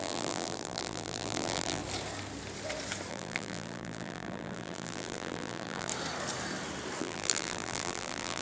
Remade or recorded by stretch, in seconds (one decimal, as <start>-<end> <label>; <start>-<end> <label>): 0.0-1.8 remade; 1.8-3.1 recorded; 3.1-5.9 remade; 5.9-7.0 recorded; 7.0-8.4 remade